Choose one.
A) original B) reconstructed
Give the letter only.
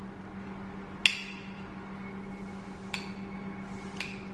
A